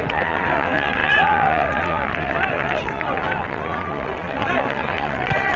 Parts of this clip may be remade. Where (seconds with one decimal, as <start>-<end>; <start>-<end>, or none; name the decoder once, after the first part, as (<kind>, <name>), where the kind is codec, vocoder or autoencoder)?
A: 0.0-5.6 (vocoder, WaveNeXt)